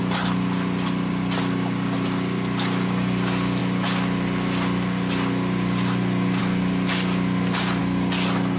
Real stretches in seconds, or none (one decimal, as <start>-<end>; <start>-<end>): 0.0-8.6